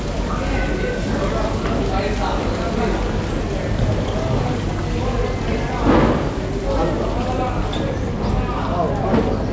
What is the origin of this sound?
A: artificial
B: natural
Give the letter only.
B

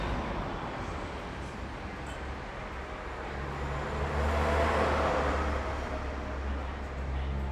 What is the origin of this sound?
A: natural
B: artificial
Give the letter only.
A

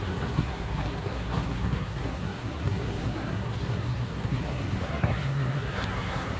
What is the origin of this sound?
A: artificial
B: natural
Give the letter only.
A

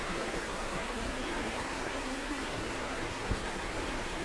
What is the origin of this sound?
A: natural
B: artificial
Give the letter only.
B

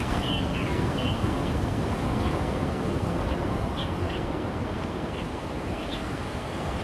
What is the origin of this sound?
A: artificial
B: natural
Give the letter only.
A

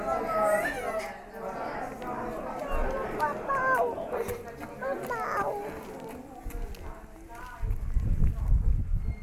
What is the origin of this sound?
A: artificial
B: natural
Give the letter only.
B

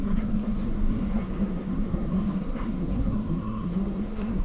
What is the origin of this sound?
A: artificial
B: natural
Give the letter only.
A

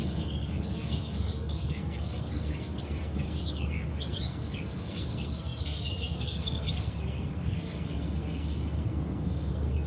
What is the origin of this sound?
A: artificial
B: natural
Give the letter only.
A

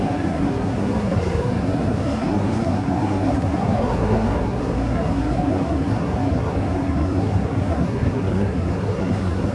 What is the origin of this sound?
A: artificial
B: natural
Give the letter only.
A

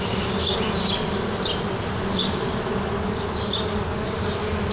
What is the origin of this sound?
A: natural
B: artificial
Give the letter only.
A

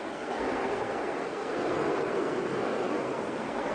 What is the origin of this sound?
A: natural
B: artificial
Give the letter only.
B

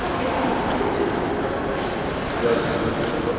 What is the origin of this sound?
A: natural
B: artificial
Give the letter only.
A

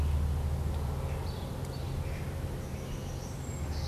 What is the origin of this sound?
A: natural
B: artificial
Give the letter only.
A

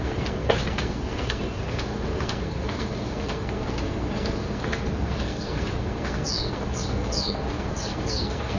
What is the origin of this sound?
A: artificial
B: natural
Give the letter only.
A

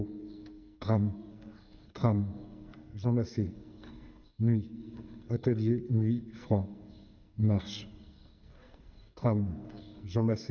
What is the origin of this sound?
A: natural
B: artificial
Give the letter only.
B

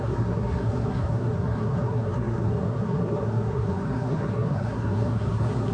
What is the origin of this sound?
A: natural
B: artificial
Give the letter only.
B